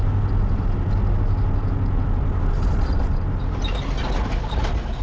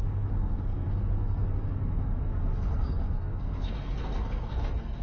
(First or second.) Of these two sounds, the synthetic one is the second